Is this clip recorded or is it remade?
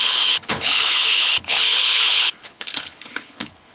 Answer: remade